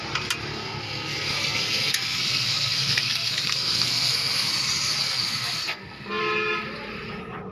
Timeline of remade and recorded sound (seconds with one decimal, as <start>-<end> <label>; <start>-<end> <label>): 0.0-0.5 recorded; 0.5-4.5 remade; 4.5-5.0 recorded; 5.0-6.2 remade; 6.2-7.5 recorded